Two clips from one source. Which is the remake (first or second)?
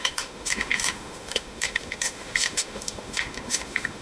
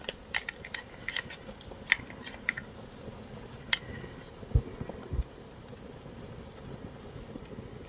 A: first